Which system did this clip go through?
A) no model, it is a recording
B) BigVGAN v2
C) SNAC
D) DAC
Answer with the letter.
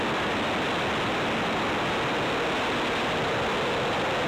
A